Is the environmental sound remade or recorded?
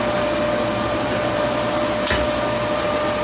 recorded